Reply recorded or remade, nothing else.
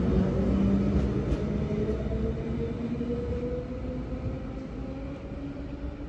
recorded